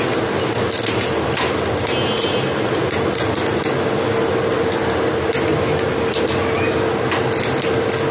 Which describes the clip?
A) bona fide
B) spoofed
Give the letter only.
A